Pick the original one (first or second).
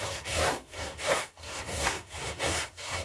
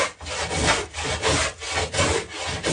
second